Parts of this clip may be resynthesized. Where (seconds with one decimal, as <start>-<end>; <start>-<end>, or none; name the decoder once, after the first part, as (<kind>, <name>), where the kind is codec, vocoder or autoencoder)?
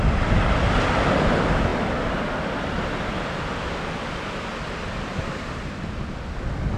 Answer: none